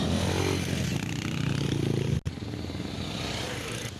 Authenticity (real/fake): real